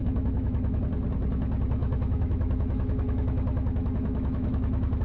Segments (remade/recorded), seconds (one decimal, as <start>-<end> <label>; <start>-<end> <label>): 0.0-0.8 remade; 0.8-1.8 recorded; 1.8-5.0 remade